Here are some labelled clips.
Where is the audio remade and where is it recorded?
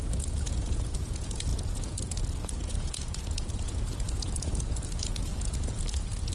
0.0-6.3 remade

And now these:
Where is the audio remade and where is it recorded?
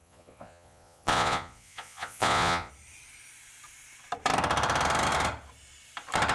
0.0-2.7 remade; 2.7-6.3 recorded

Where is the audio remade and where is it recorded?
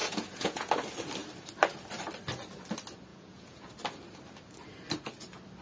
0.0-0.7 remade; 0.7-3.1 recorded; 3.1-3.7 remade; 3.7-5.6 recorded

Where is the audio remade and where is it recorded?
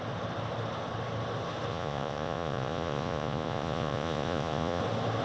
0.0-1.7 recorded; 1.7-4.8 remade; 4.8-5.2 recorded